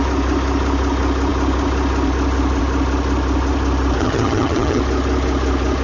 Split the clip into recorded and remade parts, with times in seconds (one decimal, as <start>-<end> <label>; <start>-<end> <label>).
0.0-4.0 recorded; 4.0-4.8 remade; 4.8-5.8 recorded